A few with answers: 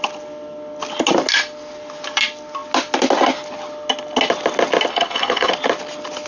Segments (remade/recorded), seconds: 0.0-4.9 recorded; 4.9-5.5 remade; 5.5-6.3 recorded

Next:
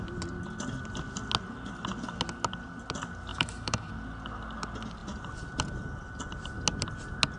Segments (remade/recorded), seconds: 0.0-3.3 recorded; 3.3-3.9 remade; 3.9-7.4 recorded

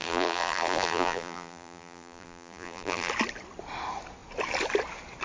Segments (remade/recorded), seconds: 0.0-3.1 remade; 3.1-5.2 recorded

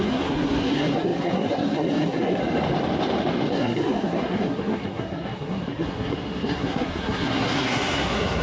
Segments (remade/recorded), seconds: 0.0-2.4 remade; 2.4-3.5 recorded; 3.5-8.4 remade

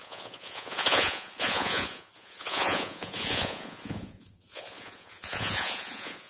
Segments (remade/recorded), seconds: 0.0-6.3 remade

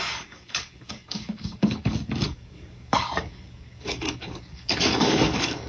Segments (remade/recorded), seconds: 0.0-5.7 remade